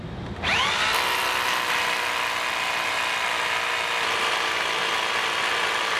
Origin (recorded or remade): recorded